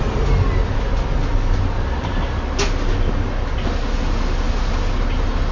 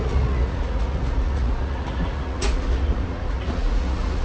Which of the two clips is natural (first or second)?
first